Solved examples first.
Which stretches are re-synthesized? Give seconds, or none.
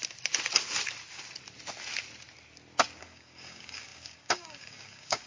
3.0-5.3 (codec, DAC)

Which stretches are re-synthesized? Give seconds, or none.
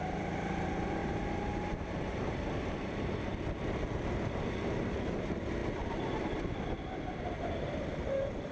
1.0-3.3 (vocoder, BigVGAN v2)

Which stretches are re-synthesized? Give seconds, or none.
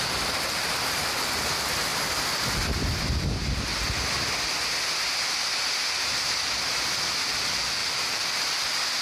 7.8-8.4 (vocoder, BigVGAN v2)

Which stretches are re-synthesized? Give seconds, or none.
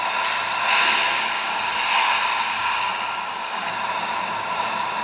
0.7-3.7 (codec, DAC)